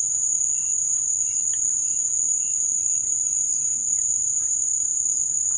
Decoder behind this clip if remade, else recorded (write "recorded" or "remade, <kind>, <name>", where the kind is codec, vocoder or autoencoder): recorded